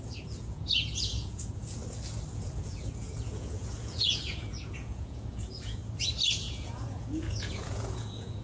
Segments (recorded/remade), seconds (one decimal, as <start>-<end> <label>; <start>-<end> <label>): 0.0-1.8 remade; 1.8-2.3 recorded; 2.3-5.8 remade; 5.8-6.4 recorded; 6.4-8.4 remade